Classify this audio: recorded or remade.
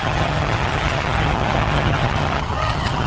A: remade